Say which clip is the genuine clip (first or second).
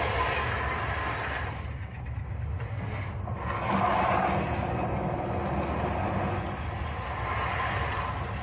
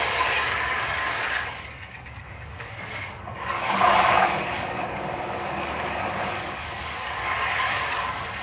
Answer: first